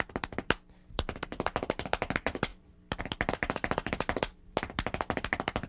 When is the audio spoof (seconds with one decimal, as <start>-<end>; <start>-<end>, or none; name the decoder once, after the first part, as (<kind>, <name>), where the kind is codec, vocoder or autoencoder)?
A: 0.0-5.7 (vocoder, BigVGAN v2)